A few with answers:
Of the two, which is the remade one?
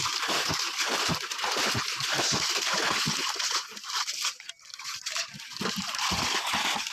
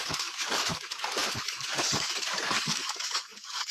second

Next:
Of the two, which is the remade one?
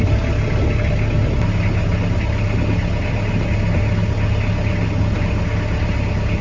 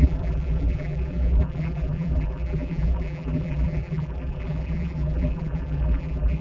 second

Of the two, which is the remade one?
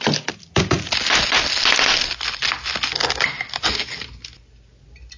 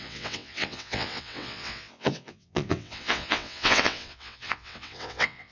second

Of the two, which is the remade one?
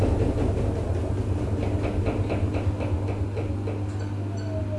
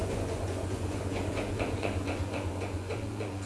second